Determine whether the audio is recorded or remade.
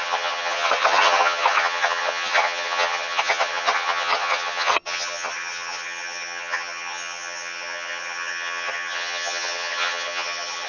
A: remade